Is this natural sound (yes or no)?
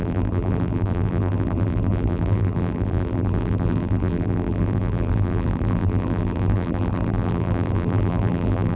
no